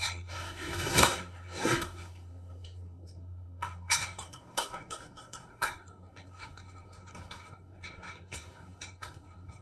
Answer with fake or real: fake